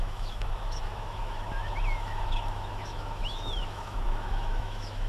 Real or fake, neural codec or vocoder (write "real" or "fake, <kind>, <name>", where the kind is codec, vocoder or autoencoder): fake, autoencoder, DAC-VAE